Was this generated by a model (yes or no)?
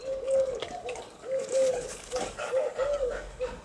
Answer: yes